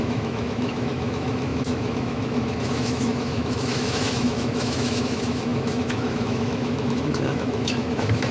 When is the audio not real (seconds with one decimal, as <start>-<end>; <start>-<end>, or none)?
0.0-8.3